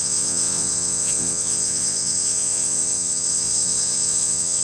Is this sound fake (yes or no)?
yes